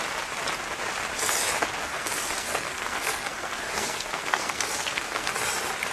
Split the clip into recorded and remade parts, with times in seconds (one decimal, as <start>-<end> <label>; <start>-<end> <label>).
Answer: 0.0-1.8 recorded; 1.8-5.3 remade; 5.3-5.9 recorded